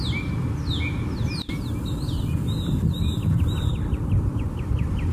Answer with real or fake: real